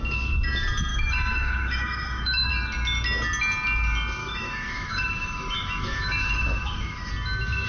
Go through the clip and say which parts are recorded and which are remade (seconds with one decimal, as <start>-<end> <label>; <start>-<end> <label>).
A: 0.0-0.9 recorded; 0.9-2.5 remade; 2.5-4.2 recorded; 4.2-7.1 remade; 7.1-7.7 recorded